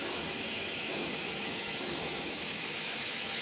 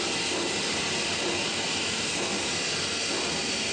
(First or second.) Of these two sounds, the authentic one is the second